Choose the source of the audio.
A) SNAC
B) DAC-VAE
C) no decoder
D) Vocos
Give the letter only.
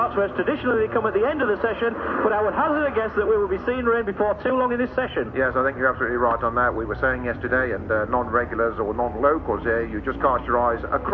C